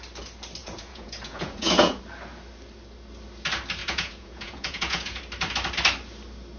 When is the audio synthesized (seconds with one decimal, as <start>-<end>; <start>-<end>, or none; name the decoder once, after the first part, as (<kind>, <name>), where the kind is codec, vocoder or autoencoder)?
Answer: 0.6-2.0 (vocoder, Vocos); 3.8-5.2